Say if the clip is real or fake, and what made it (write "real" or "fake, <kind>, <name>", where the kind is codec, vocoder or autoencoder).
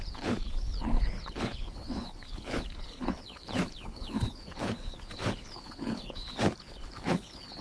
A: fake, codec, HILCodec